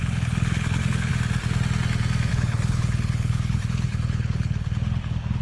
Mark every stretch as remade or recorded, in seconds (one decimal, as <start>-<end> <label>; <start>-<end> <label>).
0.0-1.1 remade; 1.1-2.3 recorded; 2.3-5.4 remade

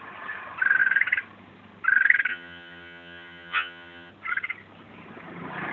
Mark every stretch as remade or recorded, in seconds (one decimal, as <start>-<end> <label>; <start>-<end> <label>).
0.0-2.3 recorded; 2.3-4.1 remade; 4.1-5.7 recorded

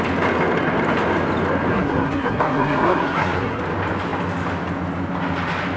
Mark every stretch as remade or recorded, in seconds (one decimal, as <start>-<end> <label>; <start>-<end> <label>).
0.0-1.7 recorded; 1.7-3.6 remade; 3.6-5.8 recorded

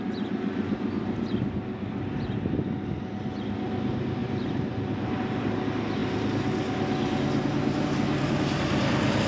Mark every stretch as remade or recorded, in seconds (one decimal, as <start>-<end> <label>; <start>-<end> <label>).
0.0-4.2 recorded; 4.2-5.6 remade; 5.6-9.3 recorded

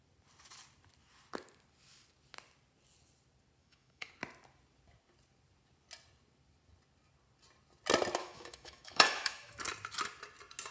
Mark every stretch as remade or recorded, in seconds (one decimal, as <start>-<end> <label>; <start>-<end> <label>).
0.0-3.6 recorded; 3.6-4.1 remade; 4.1-8.2 recorded; 8.2-9.6 remade; 9.6-10.7 recorded

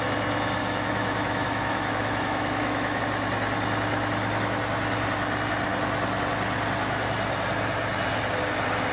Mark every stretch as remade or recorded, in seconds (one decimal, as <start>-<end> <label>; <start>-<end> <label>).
0.0-0.6 recorded; 0.6-3.0 remade; 3.0-8.9 recorded

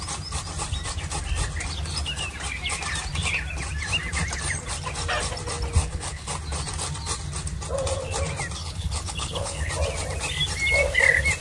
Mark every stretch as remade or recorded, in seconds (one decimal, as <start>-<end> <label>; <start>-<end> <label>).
0.0-5.8 recorded; 5.8-6.3 remade; 6.3-8.6 recorded; 8.6-9.7 remade; 9.7-11.4 recorded